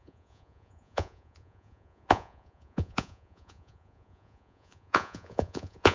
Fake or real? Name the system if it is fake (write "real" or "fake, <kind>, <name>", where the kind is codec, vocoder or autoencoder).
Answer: fake, vocoder, Vocos